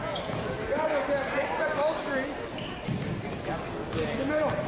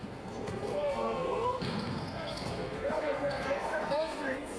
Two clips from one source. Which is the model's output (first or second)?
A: second